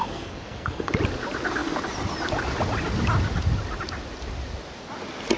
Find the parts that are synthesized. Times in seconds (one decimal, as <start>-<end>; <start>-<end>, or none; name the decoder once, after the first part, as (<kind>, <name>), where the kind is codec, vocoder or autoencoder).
0.0-0.9 (codec, SNAC)